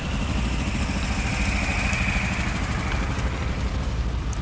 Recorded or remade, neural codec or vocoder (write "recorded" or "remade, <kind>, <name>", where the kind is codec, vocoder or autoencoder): recorded